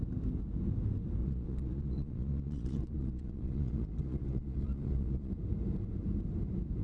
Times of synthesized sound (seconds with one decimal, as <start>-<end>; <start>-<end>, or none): 1.2-5.3